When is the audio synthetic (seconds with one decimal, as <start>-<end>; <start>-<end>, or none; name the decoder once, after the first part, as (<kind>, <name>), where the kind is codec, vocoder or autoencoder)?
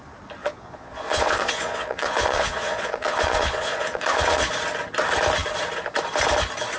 0.4-4.5 (vocoder, Vocos)